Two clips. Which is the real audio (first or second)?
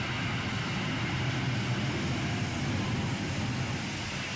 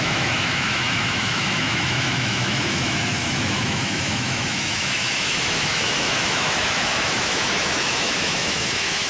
first